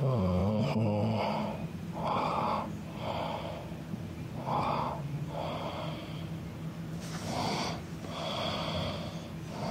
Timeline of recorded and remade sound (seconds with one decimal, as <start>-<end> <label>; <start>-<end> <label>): 0.0-9.7 recorded